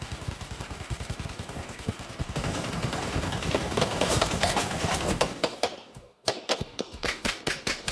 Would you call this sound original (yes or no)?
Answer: no